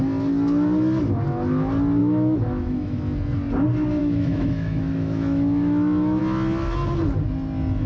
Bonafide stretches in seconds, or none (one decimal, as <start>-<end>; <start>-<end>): 0.0-2.0; 3.0-4.0; 6.2-7.9